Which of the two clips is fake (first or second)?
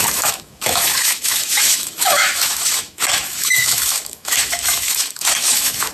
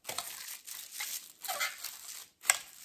first